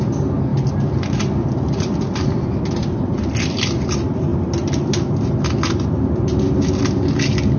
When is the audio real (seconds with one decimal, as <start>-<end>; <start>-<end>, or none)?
0.0-0.5; 1.7-4.3; 5.3-7.6